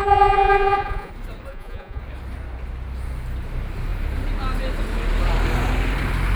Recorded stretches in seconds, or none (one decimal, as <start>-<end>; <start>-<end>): 1.1-1.5; 2.0-6.4